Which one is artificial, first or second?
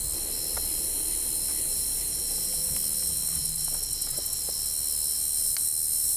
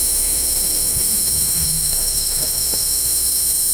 second